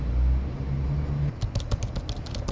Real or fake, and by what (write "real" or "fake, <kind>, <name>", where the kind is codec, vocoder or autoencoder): real